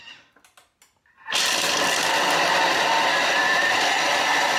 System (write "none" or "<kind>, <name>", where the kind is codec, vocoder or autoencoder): none